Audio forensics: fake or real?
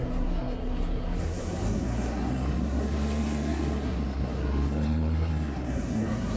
fake